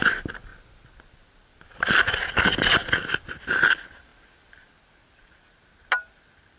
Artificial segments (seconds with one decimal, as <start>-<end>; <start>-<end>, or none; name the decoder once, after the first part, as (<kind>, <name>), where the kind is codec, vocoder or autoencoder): none